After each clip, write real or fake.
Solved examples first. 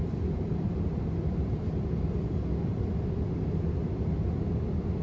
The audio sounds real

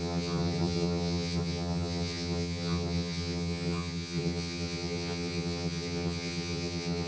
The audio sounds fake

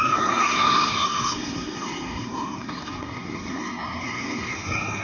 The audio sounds fake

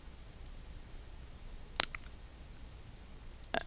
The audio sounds real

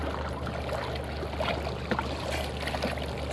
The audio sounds real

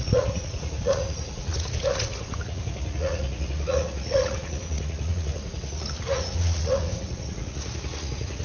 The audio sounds fake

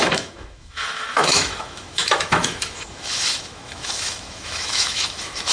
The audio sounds fake